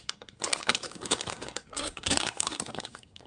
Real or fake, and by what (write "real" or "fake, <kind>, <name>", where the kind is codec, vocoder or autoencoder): fake, codec, SNAC